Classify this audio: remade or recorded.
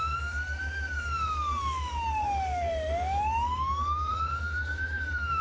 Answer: remade